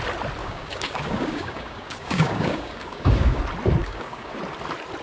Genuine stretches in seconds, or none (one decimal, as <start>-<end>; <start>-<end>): 0.0-0.4; 3.4-3.8; 4.3-5.0